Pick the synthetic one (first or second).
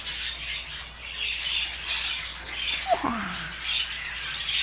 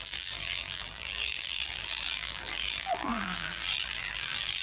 second